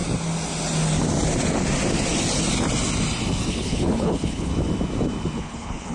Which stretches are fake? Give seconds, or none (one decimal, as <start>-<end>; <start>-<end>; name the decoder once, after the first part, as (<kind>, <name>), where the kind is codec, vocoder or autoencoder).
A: 3.5-4.5 (codec, HILCodec); 5.4-5.9